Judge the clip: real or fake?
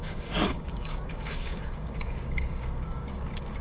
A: fake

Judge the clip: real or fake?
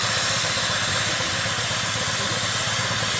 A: real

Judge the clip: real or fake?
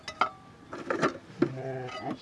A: real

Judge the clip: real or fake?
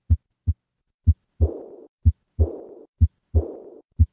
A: real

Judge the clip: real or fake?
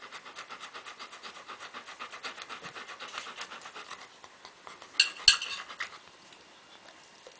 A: real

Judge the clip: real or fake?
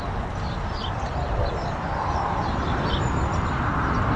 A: real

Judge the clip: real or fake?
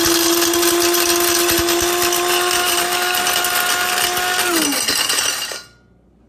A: real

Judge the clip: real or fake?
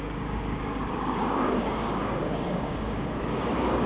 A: fake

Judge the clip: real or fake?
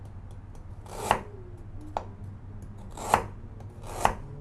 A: real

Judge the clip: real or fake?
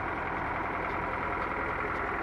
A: fake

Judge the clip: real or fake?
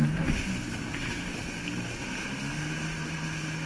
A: real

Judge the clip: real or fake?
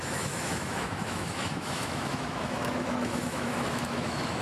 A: fake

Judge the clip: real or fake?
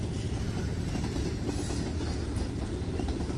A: real